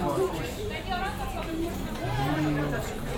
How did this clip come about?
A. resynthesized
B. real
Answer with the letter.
A